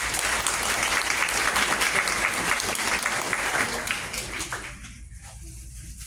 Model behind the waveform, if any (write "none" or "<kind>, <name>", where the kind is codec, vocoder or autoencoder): none